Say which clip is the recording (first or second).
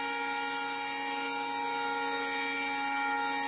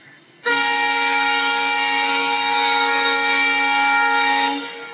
first